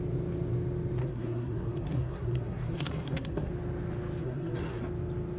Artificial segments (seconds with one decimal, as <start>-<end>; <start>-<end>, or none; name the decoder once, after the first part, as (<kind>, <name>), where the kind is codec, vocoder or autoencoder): 1.0-3.5 (codec, SNAC); 4.2-4.8